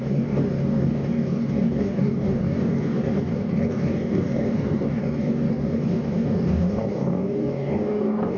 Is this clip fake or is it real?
fake